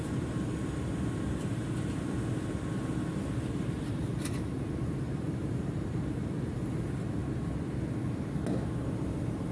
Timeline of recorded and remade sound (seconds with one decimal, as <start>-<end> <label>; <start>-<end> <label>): 0.0-0.5 remade; 0.5-3.5 recorded; 3.5-7.2 remade; 7.2-8.9 recorded; 8.9-9.5 remade